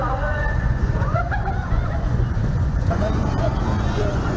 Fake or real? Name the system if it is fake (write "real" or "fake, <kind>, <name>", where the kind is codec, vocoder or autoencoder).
fake, vocoder, Vocos